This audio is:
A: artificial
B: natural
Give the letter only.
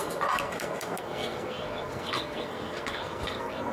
A